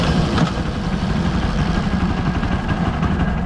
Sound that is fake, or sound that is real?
fake